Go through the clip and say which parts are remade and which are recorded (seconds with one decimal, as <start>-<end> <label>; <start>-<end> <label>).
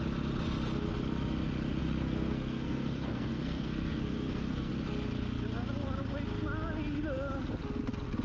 0.0-1.8 recorded; 1.8-4.7 remade; 4.7-8.2 recorded